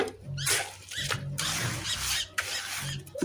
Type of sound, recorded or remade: recorded